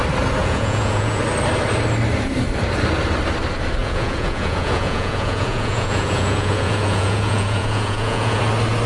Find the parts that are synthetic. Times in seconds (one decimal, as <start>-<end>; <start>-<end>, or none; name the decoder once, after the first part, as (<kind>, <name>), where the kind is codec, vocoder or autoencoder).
0.4-1.2 (vocoder, Vocos); 3.8-8.4